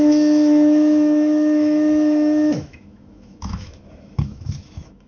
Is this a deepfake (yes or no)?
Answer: yes